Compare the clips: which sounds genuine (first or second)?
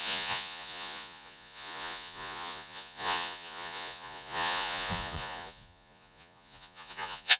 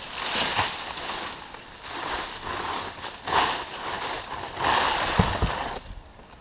second